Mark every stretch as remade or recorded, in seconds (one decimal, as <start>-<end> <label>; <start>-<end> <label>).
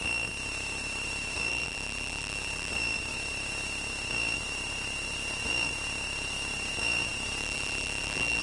0.0-1.5 recorded; 1.5-2.7 remade; 2.7-7.4 recorded; 7.4-8.4 remade